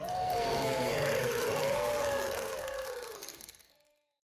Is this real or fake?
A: fake